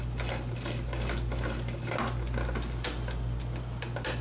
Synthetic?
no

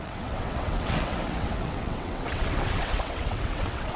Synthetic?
yes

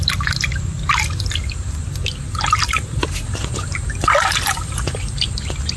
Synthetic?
no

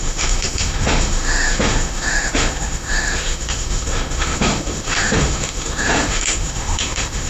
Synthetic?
yes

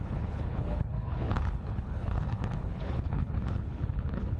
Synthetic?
yes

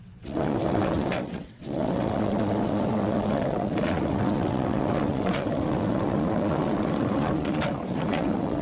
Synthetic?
yes